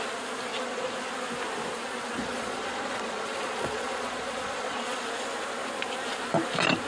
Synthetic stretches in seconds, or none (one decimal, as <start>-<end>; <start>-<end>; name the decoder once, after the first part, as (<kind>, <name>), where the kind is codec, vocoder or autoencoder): 0.5-1.1 (vocoder, Vocos); 2.2-5.0